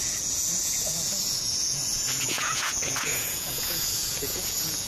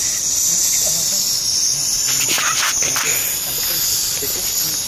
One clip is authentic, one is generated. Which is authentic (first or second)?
second